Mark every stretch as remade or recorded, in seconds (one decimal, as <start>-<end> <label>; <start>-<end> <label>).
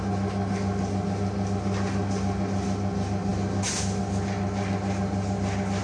0.0-5.8 recorded